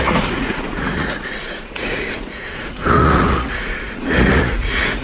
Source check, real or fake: fake